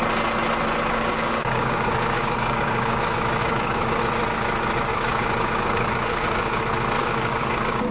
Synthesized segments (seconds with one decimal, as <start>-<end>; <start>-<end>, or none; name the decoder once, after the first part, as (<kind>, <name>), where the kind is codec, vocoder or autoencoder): 0.9-3.0 (codec, DAC); 3.4-4.0; 4.9-6.6; 7.0-7.9